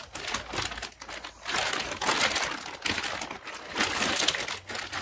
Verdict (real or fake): real